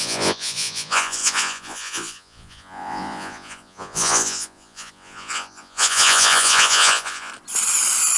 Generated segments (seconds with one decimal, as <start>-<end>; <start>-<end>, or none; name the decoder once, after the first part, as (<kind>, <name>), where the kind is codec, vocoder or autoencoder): 0.0-7.3 (vocoder, Vocos)